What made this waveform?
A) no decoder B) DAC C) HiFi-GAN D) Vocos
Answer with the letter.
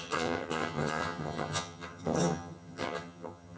C